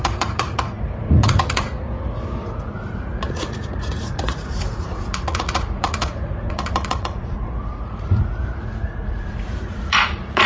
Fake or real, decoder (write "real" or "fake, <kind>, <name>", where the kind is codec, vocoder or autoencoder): fake, vocoder, Vocos